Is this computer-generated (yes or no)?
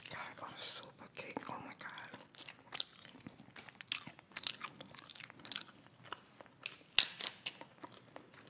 no